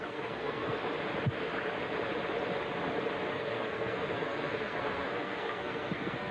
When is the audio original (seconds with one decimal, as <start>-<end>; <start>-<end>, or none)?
0.8-3.3